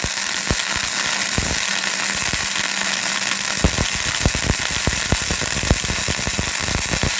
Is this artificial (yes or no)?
no